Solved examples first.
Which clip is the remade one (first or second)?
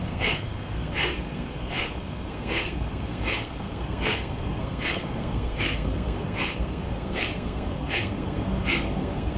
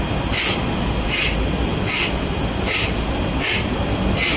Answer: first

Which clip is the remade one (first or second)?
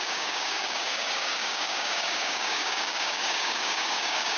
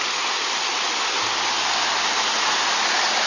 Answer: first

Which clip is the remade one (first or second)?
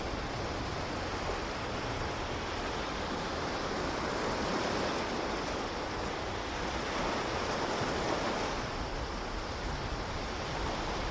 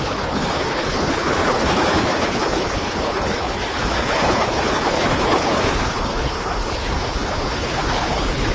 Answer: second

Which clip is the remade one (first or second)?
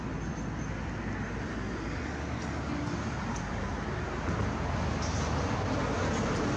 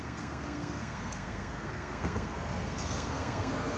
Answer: second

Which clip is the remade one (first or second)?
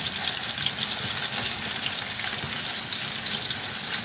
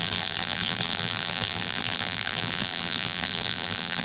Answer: second